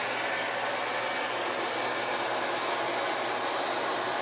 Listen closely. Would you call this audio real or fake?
real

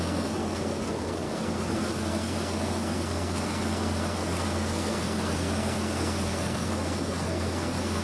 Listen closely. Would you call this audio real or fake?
fake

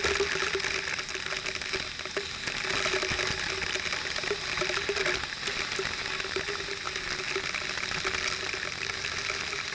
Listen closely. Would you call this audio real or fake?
real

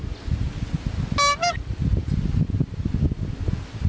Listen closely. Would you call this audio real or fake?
real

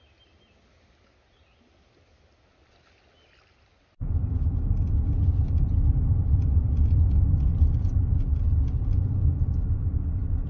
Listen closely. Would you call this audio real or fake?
real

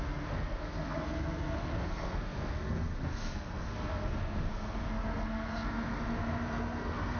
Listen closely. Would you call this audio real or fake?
fake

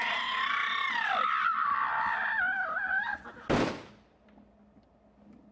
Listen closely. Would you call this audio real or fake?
real